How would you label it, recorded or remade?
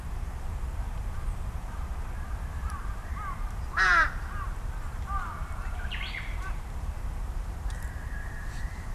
remade